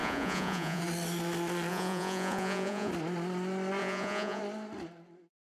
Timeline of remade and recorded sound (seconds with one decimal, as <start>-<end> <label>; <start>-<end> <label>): 0.0-0.8 remade; 0.8-1.7 recorded; 1.7-2.9 remade; 2.9-3.8 recorded; 3.8-4.4 remade; 4.4-5.4 recorded